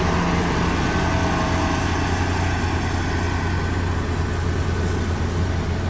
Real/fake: real